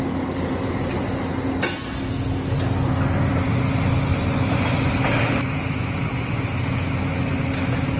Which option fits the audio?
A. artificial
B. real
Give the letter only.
B